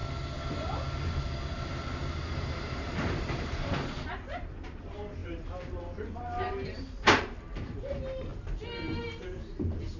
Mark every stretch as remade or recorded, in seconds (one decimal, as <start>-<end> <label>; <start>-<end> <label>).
0.0-2.4 recorded; 2.4-8.3 remade; 8.3-9.0 recorded; 9.0-10.0 remade